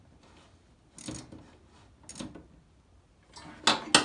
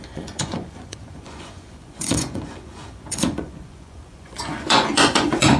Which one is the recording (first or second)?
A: first